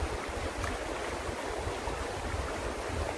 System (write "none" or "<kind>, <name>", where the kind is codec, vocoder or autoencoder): none